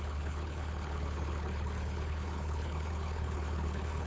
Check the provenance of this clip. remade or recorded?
remade